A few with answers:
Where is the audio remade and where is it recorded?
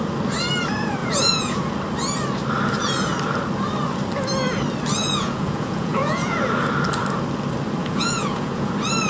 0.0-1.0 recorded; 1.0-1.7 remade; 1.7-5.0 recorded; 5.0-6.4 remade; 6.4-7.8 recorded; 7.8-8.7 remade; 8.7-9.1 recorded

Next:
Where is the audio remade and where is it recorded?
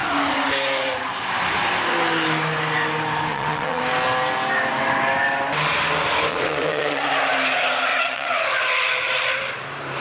0.0-3.3 recorded; 3.3-3.8 remade; 3.8-6.3 recorded; 6.3-7.1 remade; 7.1-7.9 recorded; 7.9-8.4 remade; 8.4-10.0 recorded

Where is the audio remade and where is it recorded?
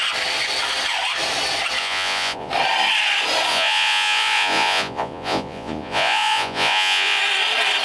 0.0-1.8 recorded; 1.8-2.5 remade; 2.5-3.5 recorded; 3.5-7.2 remade; 7.2-7.8 recorded